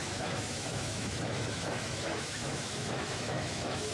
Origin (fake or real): fake